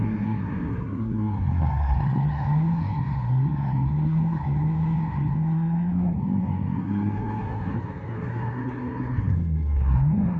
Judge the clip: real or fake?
fake